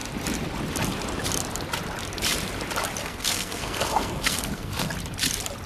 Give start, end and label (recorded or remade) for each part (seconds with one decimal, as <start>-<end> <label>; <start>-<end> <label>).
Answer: 0.0-3.0 recorded; 3.0-4.9 remade; 4.9-5.7 recorded